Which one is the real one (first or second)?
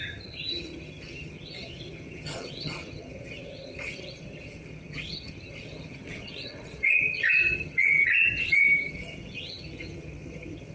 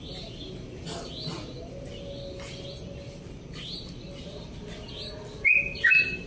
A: second